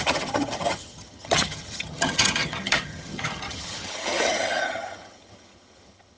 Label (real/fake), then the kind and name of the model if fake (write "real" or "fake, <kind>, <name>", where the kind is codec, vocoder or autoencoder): fake, vocoder, HiFi-GAN